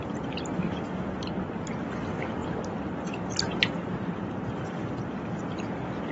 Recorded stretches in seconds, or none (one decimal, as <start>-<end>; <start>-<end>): 0.0-6.1